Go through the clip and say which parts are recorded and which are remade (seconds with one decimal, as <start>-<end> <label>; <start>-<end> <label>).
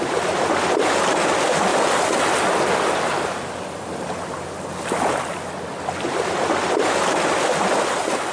0.0-8.3 recorded